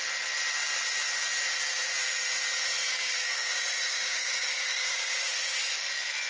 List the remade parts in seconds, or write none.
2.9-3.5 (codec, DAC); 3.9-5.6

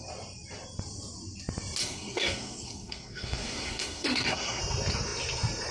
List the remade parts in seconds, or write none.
1.8-4.6 (codec, SNAC)

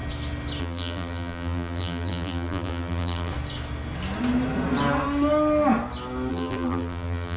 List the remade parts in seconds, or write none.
0.6-3.3 (vocoder, BigVGAN v2); 6.3-7.4

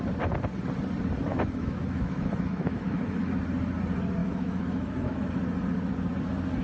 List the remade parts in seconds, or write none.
1.3-3.4 (autoencoder, DAC-VAE); 4.2-5.3

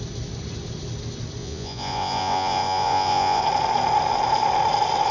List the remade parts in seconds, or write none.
1.4-3.4 (vocoder, Vocos)

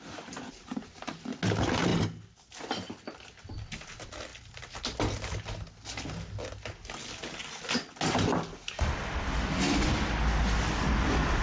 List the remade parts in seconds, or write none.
none

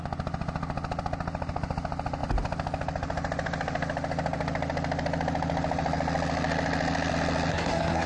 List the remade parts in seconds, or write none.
7.5-8.1 (codec, SNAC)

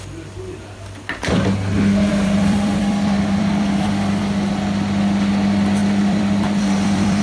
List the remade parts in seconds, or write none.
2.1-4.2 (vocoder, BigVGAN v2); 5.8-7.2